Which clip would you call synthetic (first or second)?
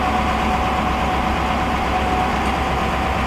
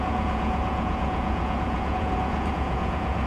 second